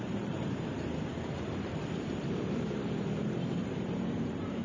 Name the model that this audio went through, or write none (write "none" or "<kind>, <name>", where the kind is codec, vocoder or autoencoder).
vocoder, BigVGAN v2